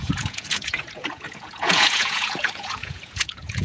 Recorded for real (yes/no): no